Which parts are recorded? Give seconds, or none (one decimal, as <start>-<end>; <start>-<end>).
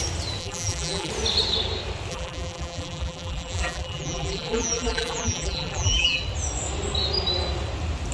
0.0-0.4; 1.1-2.1; 6.2-8.1